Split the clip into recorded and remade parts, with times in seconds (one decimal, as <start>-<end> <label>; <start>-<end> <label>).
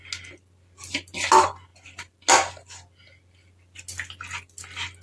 0.0-5.0 recorded